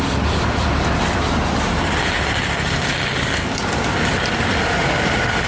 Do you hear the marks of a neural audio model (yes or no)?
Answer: no